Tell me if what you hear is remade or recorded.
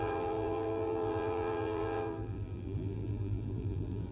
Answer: remade